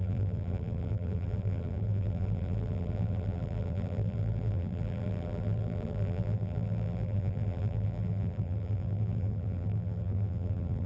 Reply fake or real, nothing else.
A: fake